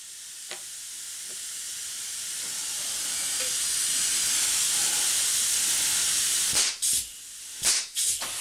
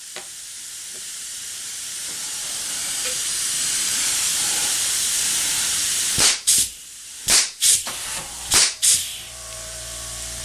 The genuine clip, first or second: first